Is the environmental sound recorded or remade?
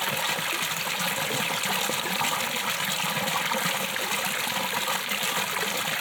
recorded